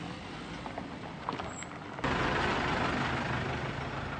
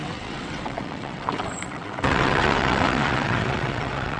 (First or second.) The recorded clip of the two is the first